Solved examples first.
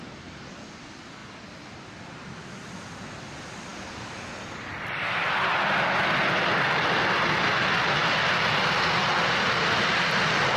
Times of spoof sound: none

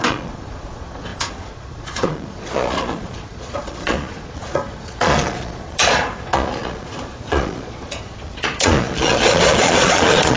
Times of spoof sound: 0.0-10.4 (vocoder, Vocos)

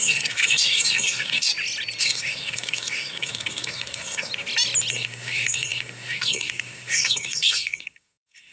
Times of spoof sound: 0.0-1.5 (codec, SNAC); 2.0-4.3; 4.9-8.5

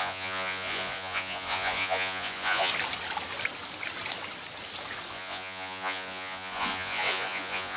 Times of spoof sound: 0.0-2.7 (vocoder, Vocos); 5.1-7.8

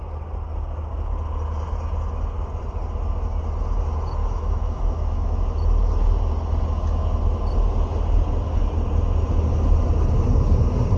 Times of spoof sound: 4.2-5.4 (autoencoder, DAC-VAE)

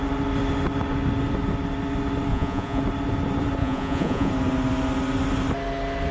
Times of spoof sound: 2.3-2.8 (vocoder, Vocos); 3.6-4.3

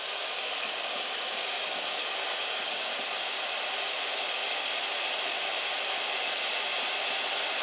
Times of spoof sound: 0.0-2.9 (codec, DAC)